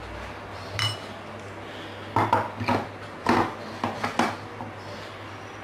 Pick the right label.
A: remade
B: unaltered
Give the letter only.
B